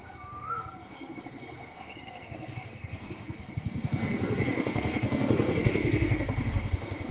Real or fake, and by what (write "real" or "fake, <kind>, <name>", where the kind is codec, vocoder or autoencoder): fake, codec, SNAC